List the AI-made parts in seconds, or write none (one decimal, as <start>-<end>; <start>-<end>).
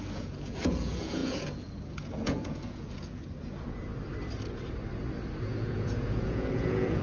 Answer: 0.0-3.9; 5.4-7.0